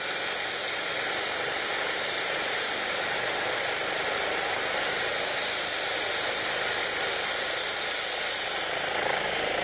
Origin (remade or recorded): recorded